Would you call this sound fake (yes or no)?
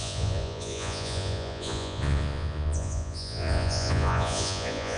yes